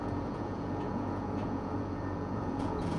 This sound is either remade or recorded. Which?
remade